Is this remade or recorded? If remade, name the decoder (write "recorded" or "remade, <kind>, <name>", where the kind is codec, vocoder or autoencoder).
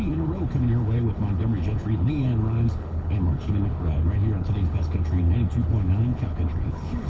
remade, codec, HILCodec